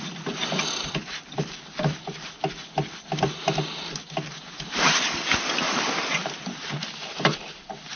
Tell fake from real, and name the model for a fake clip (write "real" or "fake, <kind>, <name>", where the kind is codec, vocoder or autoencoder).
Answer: fake, vocoder, BigVGAN v2